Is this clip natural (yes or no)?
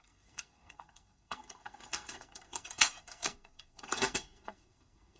no